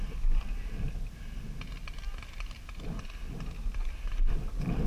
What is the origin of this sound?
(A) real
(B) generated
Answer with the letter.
A